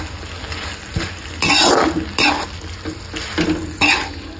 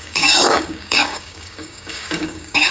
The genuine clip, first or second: first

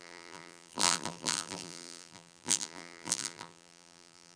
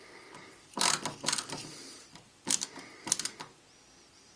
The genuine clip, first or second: second